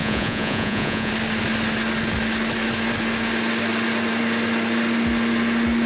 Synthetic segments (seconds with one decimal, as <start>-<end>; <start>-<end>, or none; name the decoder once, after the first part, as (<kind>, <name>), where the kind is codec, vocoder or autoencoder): 0.0-1.1 (vocoder, Vocos)